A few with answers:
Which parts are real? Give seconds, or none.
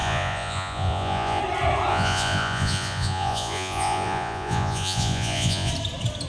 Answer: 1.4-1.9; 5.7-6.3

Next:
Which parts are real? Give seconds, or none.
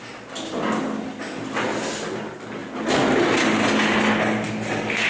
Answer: 0.0-5.1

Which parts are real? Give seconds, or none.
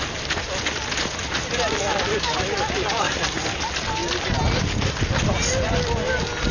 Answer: 0.0-6.5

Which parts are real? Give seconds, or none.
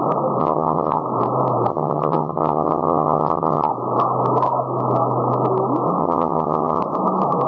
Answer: 0.0-0.4; 1.0-1.7; 3.7-6.0; 6.8-7.5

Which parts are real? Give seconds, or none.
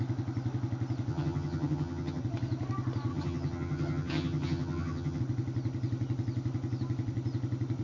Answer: 0.0-1.1; 2.2-3.1; 5.2-7.8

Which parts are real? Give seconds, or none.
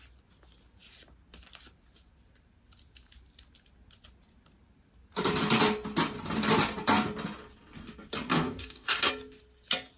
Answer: 0.0-8.3; 9.1-10.0